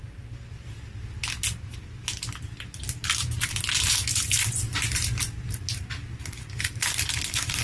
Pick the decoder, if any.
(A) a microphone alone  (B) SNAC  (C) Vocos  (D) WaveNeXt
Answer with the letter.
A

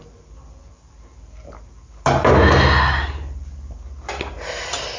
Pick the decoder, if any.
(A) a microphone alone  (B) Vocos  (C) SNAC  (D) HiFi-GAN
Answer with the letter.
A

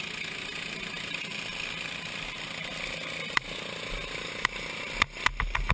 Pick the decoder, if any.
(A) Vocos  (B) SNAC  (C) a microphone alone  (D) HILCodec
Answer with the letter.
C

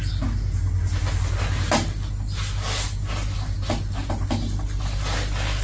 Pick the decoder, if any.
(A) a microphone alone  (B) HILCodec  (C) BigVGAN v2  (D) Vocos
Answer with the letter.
A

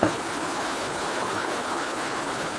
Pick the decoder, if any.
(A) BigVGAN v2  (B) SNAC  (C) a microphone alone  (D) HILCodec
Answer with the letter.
D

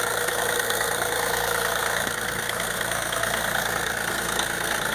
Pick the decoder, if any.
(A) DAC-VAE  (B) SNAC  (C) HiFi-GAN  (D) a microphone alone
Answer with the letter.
B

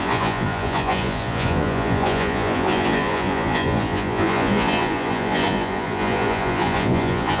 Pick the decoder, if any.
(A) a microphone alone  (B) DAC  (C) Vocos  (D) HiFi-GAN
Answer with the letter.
C